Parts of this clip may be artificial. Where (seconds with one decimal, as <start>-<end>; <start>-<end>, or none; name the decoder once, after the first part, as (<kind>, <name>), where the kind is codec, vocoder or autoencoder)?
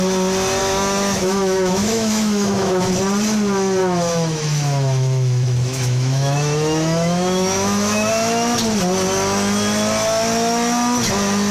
0.6-2.9 (autoencoder, DAC-VAE); 3.8-8.1